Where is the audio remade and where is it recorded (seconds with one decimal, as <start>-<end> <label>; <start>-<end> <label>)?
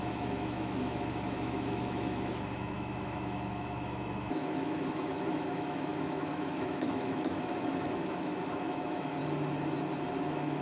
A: 0.0-9.2 remade; 9.2-10.2 recorded; 10.2-10.6 remade